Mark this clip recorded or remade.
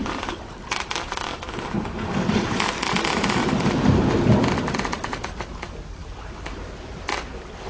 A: recorded